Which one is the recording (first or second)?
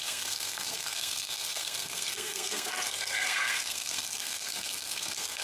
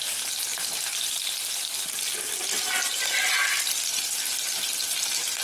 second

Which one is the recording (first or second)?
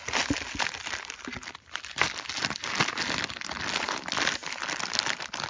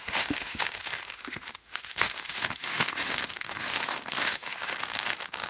first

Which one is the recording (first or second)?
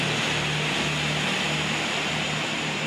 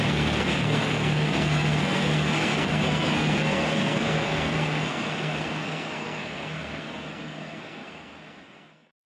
first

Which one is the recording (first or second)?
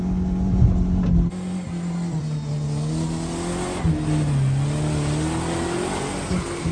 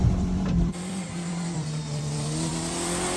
first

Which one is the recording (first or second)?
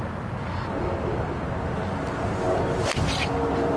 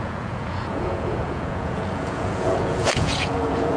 first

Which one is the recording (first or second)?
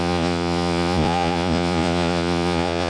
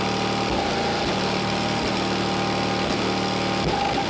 second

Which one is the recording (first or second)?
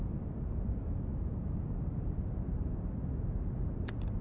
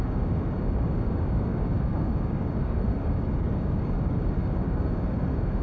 first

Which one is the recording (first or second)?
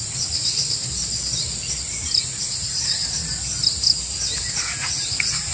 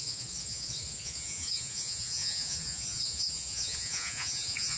first